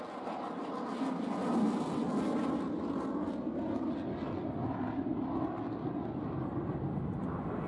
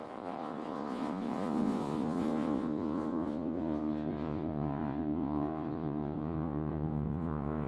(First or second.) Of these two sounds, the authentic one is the first